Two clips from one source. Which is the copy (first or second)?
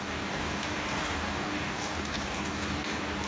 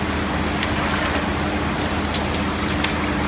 first